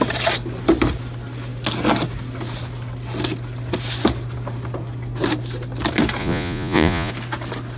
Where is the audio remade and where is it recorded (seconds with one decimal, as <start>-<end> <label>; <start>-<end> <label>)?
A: 0.0-6.2 recorded; 6.2-7.1 remade; 7.1-7.8 recorded